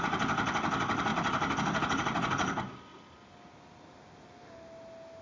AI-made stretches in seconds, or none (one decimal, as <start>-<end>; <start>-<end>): none